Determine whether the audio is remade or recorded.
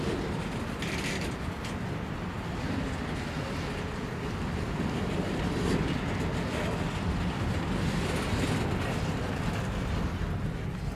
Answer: recorded